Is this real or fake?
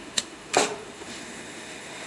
fake